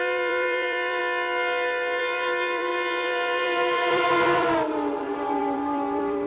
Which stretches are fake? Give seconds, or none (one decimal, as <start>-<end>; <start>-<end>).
0.0-1.0; 2.0-6.3